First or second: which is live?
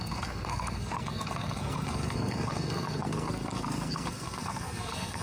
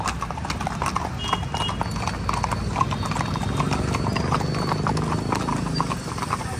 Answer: second